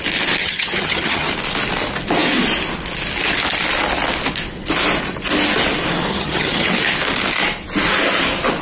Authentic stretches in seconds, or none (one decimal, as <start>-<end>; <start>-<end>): 0.0-0.4; 1.3-6.1; 6.7-8.6